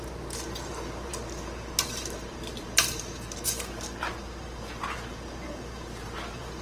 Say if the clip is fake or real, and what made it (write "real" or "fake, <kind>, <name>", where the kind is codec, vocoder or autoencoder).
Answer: fake, vocoder, BigVGAN v2